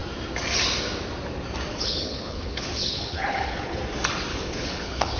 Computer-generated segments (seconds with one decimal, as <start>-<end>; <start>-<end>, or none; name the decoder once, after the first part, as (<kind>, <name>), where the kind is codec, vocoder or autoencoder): 1.7-3.8 (codec, HILCodec); 4.3-5.2